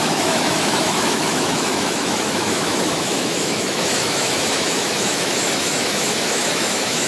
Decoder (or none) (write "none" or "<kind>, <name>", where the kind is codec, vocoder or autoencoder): autoencoder, DAC-VAE